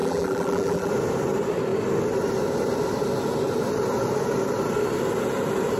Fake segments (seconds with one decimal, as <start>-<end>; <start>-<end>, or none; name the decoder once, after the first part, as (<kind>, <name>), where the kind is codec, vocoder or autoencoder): 0.0-0.9 (vocoder, BigVGAN v2)